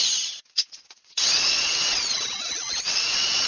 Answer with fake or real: fake